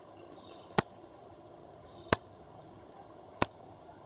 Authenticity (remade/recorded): remade